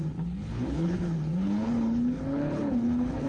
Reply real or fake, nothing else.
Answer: fake